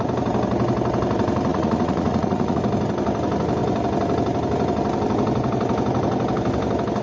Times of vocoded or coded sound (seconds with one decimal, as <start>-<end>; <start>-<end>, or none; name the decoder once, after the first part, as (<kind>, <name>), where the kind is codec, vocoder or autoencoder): 1.5-2.6 (vocoder, Vocos)